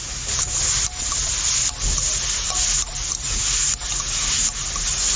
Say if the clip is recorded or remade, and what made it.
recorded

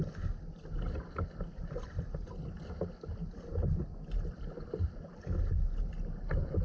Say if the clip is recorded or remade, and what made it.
recorded